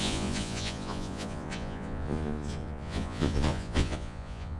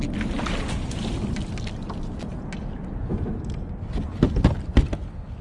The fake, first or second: first